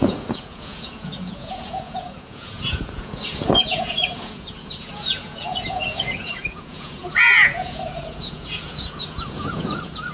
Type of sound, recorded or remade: remade